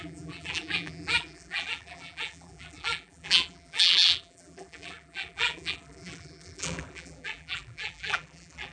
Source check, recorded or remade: remade